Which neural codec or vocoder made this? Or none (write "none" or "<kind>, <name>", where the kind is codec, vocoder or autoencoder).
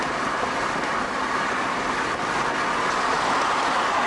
none